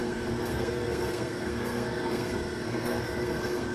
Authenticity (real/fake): fake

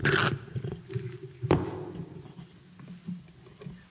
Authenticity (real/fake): real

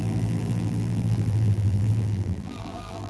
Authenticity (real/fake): fake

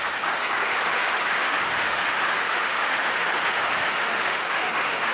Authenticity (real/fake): fake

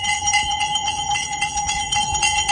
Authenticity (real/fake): fake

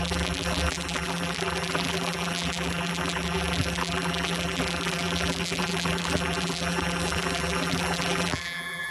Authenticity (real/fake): fake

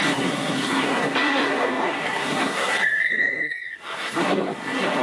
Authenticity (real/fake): fake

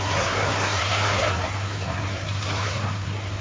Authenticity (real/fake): fake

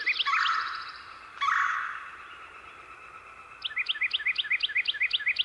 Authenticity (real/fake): real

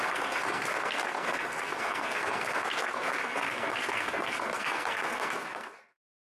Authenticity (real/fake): fake